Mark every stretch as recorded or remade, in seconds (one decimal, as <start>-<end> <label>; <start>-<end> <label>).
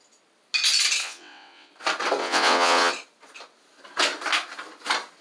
0.0-1.0 recorded; 1.0-1.7 remade; 1.7-2.2 recorded; 2.2-2.9 remade; 2.9-5.2 recorded